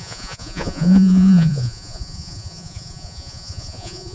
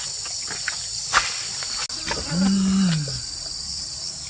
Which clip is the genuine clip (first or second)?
second